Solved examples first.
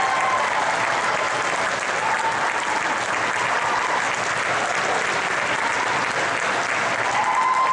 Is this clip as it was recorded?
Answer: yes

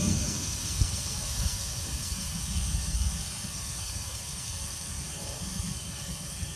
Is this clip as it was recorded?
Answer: no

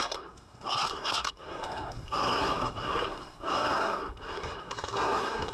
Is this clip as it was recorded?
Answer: no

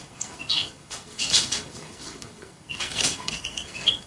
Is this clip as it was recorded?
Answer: no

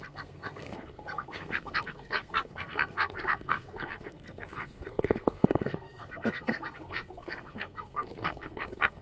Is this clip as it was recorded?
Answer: no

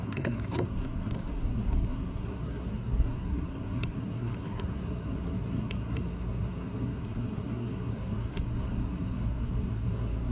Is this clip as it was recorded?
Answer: no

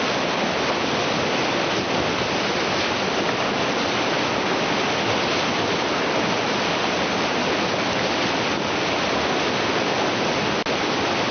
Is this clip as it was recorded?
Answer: yes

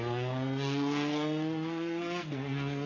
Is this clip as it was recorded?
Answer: no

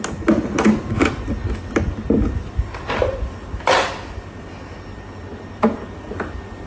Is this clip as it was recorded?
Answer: yes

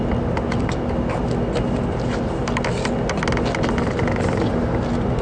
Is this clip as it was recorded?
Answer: yes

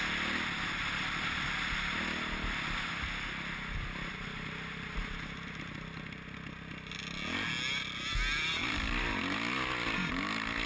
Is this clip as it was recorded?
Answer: yes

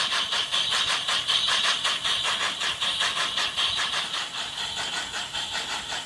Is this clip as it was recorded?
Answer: yes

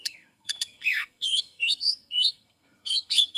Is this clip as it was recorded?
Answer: no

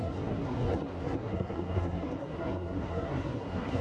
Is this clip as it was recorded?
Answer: no